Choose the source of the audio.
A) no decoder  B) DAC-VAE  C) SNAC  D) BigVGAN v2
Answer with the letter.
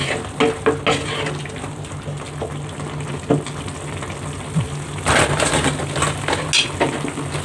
A